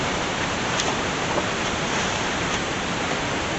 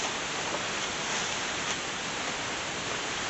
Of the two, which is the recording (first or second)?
second